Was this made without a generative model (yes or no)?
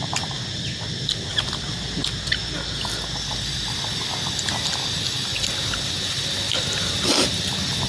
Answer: yes